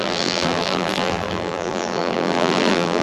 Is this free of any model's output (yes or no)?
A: no